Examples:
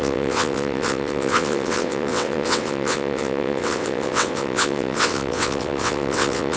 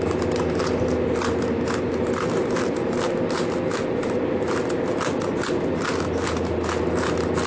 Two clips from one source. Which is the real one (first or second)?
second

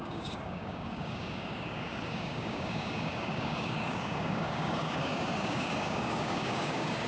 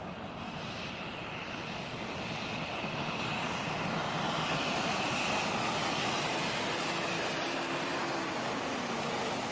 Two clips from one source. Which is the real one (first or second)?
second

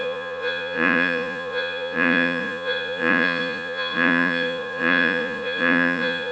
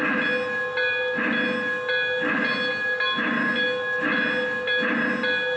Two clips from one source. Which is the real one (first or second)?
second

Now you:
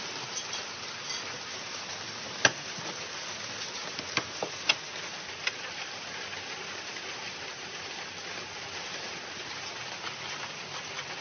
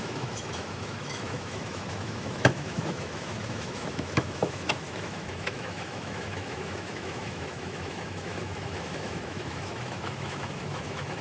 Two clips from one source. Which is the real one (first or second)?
first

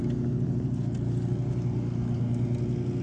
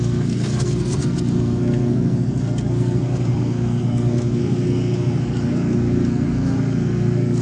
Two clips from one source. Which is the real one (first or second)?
first